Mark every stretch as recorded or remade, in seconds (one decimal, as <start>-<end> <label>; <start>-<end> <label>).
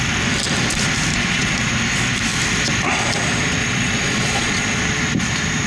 0.0-1.1 recorded; 1.1-1.7 remade; 1.7-3.6 recorded; 3.6-4.8 remade; 4.8-5.7 recorded